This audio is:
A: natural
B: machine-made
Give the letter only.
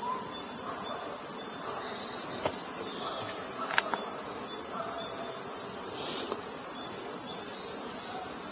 A